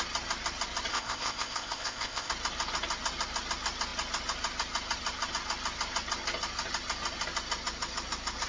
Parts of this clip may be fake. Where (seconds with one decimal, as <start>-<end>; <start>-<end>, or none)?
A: 0.9-2.3